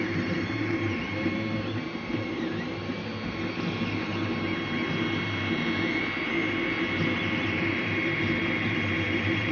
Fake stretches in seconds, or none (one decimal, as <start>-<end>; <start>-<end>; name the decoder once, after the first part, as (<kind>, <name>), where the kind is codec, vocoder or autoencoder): 0.0-3.1 (vocoder, BigVGAN v2); 7.0-9.5